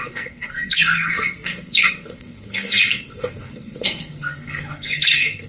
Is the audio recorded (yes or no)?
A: no